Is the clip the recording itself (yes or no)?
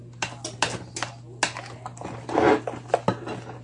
yes